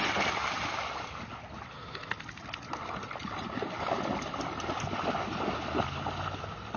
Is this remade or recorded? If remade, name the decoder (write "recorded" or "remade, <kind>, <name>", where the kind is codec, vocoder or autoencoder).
recorded